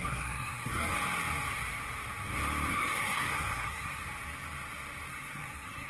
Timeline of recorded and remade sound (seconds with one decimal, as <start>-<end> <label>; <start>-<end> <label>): 0.0-0.9 remade; 0.9-2.7 recorded; 2.7-4.0 remade; 4.0-5.1 recorded; 5.1-5.9 remade